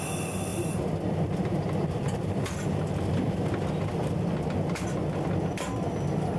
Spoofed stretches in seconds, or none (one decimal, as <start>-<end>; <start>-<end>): 0.5-4.3